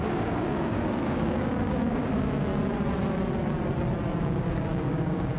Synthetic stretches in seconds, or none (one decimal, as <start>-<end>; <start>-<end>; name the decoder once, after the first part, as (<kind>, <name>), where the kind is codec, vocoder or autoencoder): 0.0-2.5 (codec, DAC); 4.2-5.4